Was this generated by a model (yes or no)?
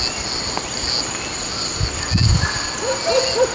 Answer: no